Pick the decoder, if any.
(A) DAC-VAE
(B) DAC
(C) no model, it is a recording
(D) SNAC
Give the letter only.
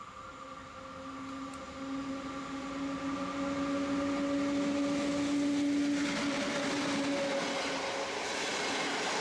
C